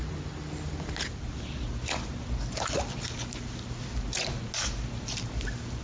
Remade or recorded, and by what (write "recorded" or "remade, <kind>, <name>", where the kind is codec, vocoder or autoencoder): recorded